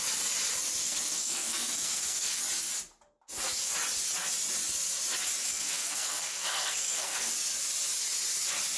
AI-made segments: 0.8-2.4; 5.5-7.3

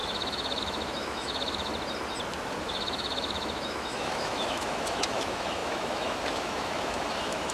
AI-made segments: 0.0-1.7; 2.6-7.5

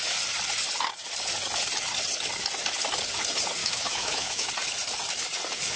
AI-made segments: 3.6-4.5

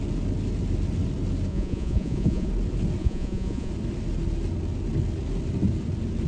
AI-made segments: 1.5-2.5; 3.0-3.7

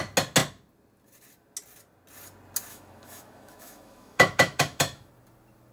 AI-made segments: 2.7-5.1

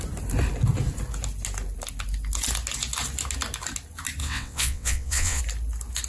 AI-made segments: 4.2-5.4